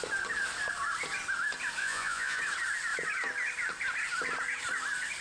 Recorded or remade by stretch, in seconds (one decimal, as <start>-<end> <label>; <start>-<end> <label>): 0.0-1.8 recorded; 1.8-2.4 remade; 2.4-5.2 recorded